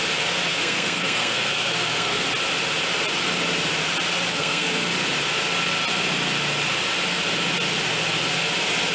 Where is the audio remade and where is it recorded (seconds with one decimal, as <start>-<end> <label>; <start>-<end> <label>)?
0.0-0.5 recorded; 0.5-2.2 remade; 2.2-4.3 recorded; 4.3-4.9 remade; 4.9-8.9 recorded

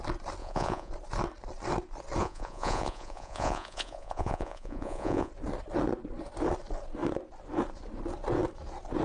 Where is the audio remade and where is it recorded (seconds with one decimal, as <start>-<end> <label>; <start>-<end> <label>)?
0.0-0.4 recorded; 0.4-0.9 remade; 0.9-2.2 recorded; 2.2-5.3 remade; 5.3-9.0 recorded

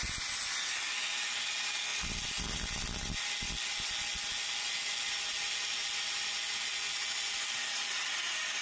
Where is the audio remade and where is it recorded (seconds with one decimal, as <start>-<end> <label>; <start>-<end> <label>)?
0.0-8.6 recorded

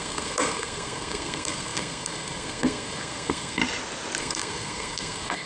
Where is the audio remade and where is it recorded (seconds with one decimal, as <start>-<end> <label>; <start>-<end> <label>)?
0.0-3.6 remade; 3.6-4.2 recorded; 4.2-5.5 remade

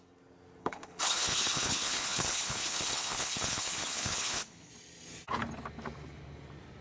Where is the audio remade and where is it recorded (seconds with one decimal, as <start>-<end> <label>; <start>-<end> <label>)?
0.0-0.6 recorded; 0.6-4.7 remade; 4.7-6.8 recorded